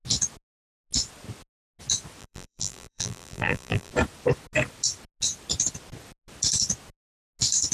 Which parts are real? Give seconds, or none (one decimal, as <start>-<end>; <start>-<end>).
0.0-2.2; 3.9-7.7

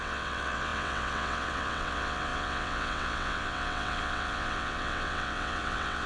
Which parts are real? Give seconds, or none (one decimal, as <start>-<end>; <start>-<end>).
none